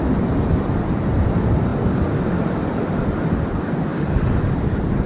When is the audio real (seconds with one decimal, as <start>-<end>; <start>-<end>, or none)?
0.0-5.1

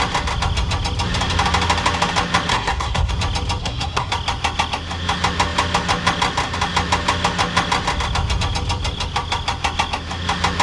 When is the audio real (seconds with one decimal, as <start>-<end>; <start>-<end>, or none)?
0.0-2.5; 3.1-3.6; 4.1-10.6